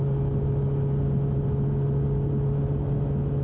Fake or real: real